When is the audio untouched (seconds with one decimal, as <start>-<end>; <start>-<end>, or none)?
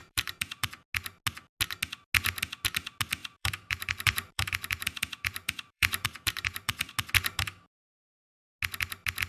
0.7-3.2; 6.9-9.3